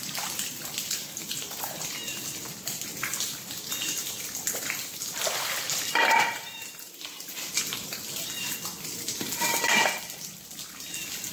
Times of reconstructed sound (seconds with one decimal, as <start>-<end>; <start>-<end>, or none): 1.0-1.6; 2.9-6.7